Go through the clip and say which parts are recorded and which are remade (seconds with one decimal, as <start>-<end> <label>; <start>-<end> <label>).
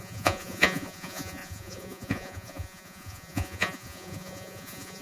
0.0-5.0 remade